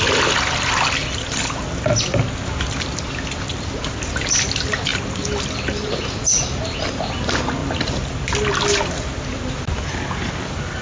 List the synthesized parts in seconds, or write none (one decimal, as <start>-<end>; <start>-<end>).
none